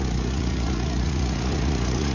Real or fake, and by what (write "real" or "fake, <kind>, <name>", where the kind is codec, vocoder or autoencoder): fake, vocoder, Vocos